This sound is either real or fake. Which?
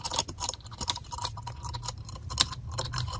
real